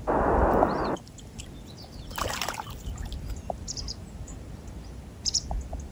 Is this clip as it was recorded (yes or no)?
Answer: yes